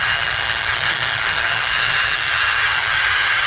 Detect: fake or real fake